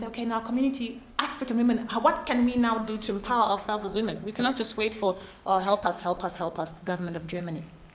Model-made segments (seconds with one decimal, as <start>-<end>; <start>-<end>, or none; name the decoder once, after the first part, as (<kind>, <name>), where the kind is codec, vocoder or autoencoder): 2.8-7.4 (codec, SNAC)